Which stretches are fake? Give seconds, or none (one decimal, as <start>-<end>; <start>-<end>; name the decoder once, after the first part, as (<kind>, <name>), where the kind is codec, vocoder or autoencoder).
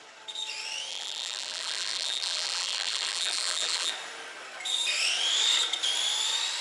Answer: 0.9-3.9 (vocoder, BigVGAN v2)